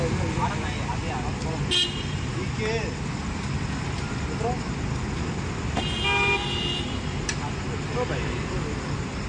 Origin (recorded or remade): recorded